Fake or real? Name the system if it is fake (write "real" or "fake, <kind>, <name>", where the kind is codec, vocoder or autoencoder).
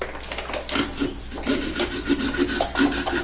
real